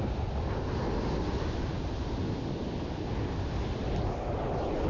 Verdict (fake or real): real